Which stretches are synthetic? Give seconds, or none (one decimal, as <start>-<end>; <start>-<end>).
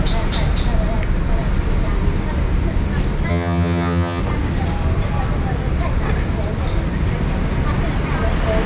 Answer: 3.3-4.2